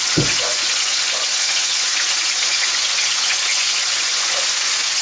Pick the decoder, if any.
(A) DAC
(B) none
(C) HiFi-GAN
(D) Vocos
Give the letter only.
D